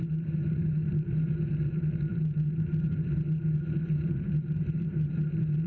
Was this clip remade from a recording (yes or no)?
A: yes